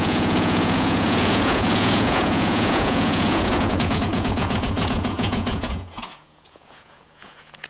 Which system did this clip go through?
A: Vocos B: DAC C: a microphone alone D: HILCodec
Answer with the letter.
A